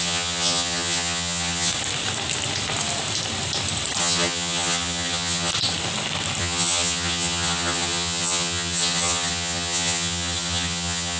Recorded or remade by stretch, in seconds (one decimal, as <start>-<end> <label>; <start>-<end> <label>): 0.0-1.7 remade; 1.7-4.0 recorded; 4.0-5.5 remade; 5.5-6.4 recorded; 6.4-11.2 remade

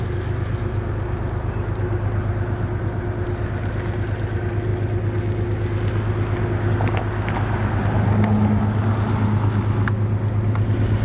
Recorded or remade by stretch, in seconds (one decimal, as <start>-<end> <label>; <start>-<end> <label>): 0.0-11.0 recorded

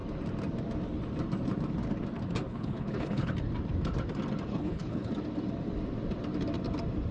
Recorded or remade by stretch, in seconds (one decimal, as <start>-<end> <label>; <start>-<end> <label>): 0.0-2.5 recorded; 2.5-3.3 remade; 3.3-4.5 recorded; 4.5-5.1 remade; 5.1-7.1 recorded

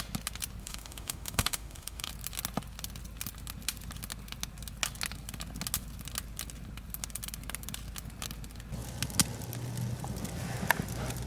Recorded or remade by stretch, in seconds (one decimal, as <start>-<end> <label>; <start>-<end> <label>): 0.0-0.6 recorded; 0.6-2.1 remade; 2.1-11.3 recorded

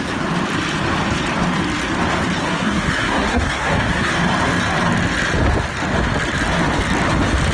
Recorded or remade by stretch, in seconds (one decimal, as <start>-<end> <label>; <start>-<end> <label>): 0.0-2.4 recorded; 2.4-4.1 remade; 4.1-7.5 recorded